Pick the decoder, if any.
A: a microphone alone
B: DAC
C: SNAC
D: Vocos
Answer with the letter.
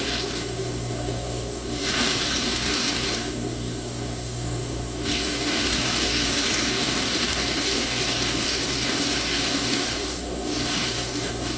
B